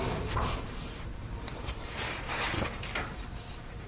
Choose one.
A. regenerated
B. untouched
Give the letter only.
A